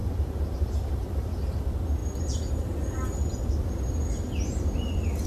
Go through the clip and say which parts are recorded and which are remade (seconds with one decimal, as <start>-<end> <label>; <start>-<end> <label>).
0.0-0.7 remade; 0.7-5.3 recorded